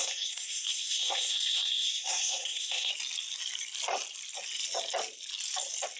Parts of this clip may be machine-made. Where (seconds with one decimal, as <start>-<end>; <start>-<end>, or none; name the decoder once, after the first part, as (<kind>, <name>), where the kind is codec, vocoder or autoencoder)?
0.0-2.9 (codec, SNAC)